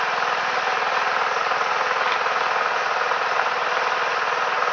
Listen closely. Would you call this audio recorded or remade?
recorded